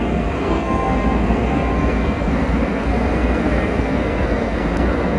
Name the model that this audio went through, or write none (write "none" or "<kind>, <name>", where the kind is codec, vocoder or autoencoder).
codec, SNAC